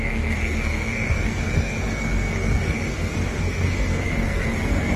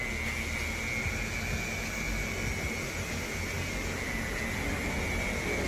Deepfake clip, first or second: first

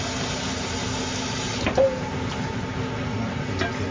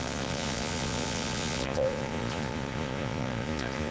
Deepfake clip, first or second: second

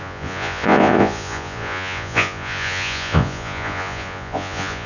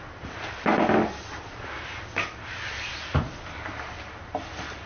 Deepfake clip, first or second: first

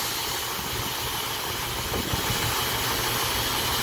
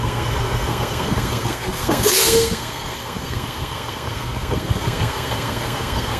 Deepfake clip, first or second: second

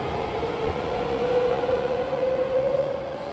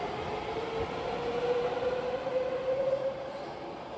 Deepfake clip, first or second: first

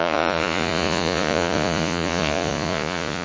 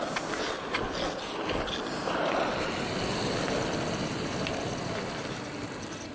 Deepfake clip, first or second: first